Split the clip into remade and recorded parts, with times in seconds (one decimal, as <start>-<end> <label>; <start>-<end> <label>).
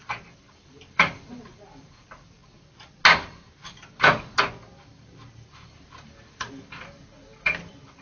0.0-2.4 remade; 2.4-5.3 recorded; 5.3-8.0 remade